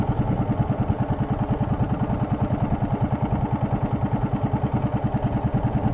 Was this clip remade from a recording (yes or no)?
no